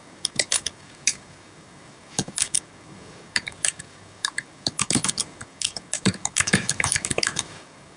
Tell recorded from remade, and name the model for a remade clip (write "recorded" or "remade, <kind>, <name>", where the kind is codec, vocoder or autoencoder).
remade, codec, DAC